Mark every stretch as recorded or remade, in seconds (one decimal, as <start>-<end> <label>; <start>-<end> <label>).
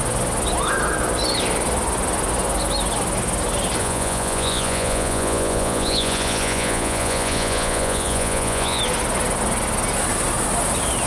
0.0-3.8 recorded; 3.8-8.8 remade; 8.8-11.1 recorded